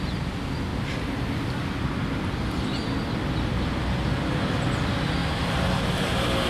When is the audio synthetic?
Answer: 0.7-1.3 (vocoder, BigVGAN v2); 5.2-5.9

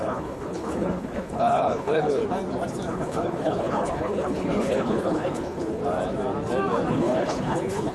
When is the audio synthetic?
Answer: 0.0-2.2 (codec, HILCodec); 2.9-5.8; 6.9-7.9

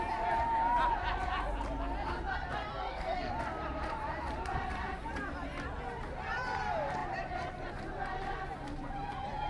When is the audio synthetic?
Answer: 2.7-3.3 (codec, SNAC)

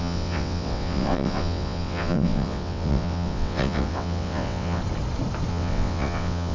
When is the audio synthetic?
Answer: 0.0-4.8 (vocoder, WaveNeXt); 5.5-6.5